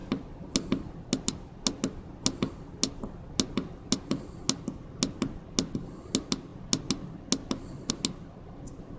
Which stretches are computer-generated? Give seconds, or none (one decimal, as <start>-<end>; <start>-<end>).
none